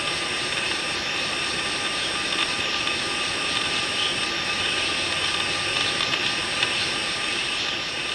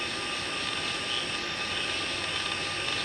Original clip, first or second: second